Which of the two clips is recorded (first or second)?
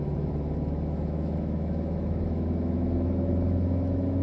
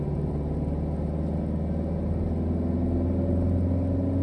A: second